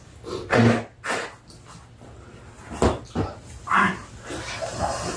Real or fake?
real